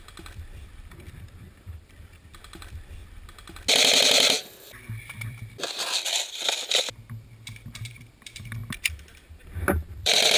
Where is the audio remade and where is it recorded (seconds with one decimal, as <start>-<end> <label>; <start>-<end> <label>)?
0.0-3.0 remade; 3.0-5.0 recorded; 5.0-8.6 remade; 8.6-9.5 recorded; 9.5-10.4 remade

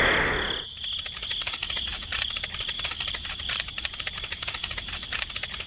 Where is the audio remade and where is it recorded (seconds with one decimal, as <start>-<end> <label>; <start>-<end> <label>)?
0.0-1.9 recorded; 1.9-5.3 remade; 5.3-5.7 recorded